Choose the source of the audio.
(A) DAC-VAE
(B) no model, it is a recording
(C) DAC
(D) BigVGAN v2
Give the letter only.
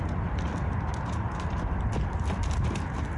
B